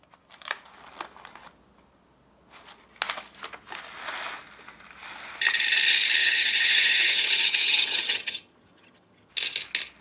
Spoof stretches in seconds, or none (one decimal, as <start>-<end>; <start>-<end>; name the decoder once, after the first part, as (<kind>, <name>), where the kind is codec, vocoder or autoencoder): 6.2-9.3 (vocoder, HiFi-GAN)